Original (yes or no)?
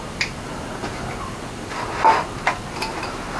yes